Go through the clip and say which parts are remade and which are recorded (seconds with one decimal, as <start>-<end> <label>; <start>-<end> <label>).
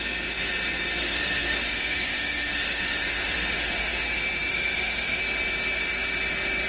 0.0-1.0 recorded; 1.0-4.0 remade; 4.0-4.5 recorded; 4.5-5.2 remade; 5.2-6.7 recorded